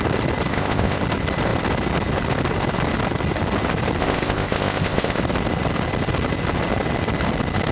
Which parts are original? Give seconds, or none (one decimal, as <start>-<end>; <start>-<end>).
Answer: 0.0-0.5; 1.0-4.0; 5.2-7.7